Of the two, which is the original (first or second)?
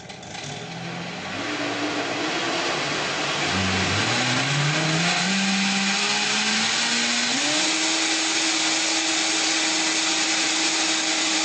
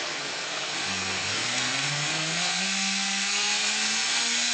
first